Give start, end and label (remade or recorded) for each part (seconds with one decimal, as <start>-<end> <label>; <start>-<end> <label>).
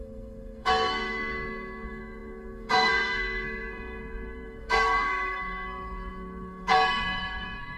0.0-7.8 remade